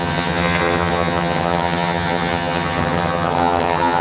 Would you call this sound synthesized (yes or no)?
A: yes